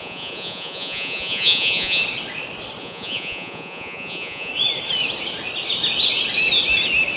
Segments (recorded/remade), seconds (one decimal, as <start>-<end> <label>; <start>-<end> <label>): 0.0-2.0 remade; 2.0-2.8 recorded; 2.8-4.5 remade; 4.5-7.2 recorded